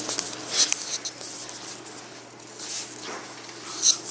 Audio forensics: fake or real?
real